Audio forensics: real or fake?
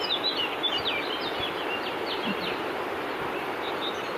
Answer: real